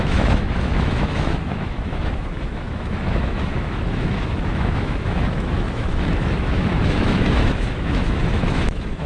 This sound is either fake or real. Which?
fake